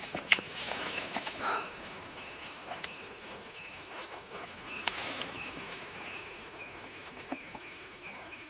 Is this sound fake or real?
fake